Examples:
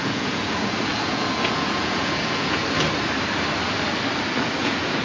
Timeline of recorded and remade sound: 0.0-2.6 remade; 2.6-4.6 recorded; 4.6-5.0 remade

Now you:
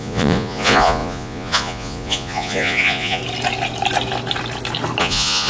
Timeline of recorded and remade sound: 0.0-3.2 remade; 3.2-5.0 recorded; 5.0-5.5 remade

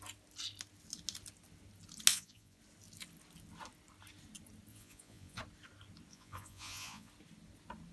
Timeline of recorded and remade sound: 0.0-2.1 recorded; 2.1-2.6 remade; 2.6-4.7 recorded; 4.7-5.4 remade; 5.4-6.1 recorded; 6.1-7.1 remade; 7.1-7.9 recorded

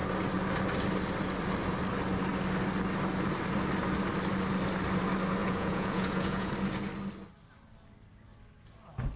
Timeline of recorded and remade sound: 0.0-5.4 recorded; 5.4-6.5 remade; 6.5-9.2 recorded